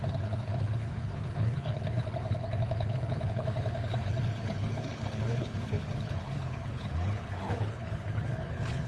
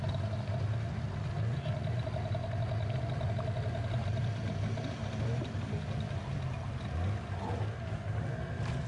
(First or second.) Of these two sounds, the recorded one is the second